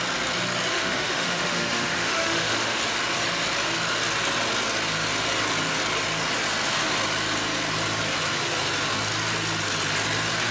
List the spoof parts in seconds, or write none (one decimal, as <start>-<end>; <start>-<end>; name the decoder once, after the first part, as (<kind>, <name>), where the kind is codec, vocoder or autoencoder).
0.7-2.8 (autoencoder, DAC-VAE)

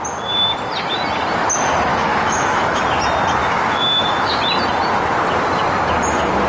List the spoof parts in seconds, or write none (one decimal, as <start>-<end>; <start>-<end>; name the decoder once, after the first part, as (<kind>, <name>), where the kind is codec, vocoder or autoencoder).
1.9-2.8 (autoencoder, DAC-VAE); 3.4-4.4